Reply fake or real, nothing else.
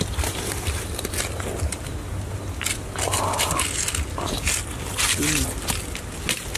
real